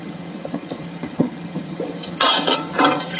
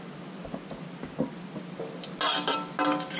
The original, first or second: second